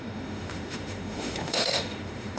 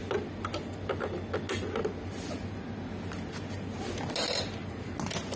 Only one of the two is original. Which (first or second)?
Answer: second